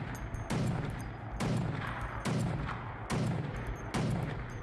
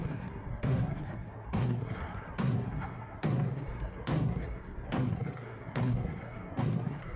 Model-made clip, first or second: second